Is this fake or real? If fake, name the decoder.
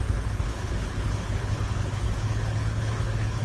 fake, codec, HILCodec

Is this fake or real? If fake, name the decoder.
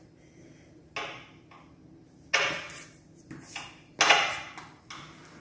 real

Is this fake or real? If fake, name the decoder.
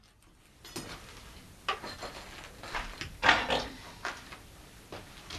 real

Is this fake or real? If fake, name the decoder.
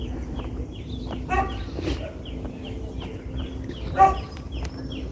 real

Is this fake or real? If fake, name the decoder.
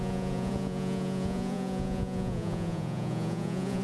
fake, vocoder, Vocos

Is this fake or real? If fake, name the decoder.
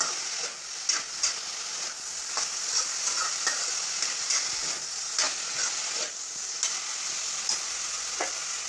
real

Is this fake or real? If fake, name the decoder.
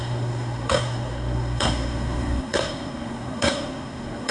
fake, codec, SNAC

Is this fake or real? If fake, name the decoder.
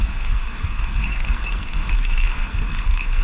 fake, codec, SNAC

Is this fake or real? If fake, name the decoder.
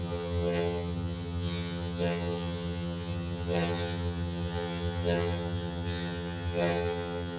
fake, vocoder, HiFi-GAN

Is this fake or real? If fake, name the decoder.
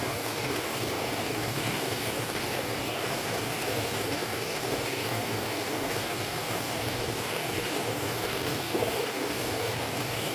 fake, codec, DAC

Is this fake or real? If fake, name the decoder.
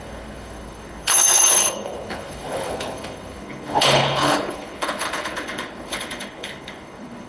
fake, codec, HILCodec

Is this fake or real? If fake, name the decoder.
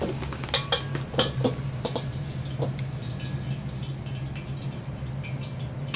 real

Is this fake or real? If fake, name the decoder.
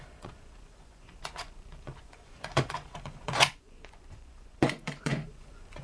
fake, vocoder, Vocos